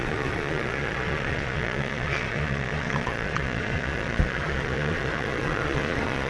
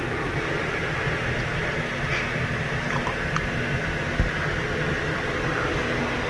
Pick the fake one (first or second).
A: first